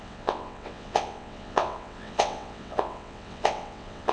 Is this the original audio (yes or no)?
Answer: no